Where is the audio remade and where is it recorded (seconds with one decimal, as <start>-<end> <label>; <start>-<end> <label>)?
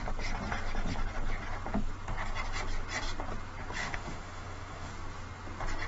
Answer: 0.0-3.8 recorded; 3.8-4.9 remade; 4.9-5.9 recorded